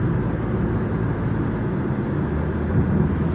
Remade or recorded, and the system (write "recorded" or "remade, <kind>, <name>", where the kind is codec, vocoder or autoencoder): recorded